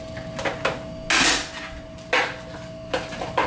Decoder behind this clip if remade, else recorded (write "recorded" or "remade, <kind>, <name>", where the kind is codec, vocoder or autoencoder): recorded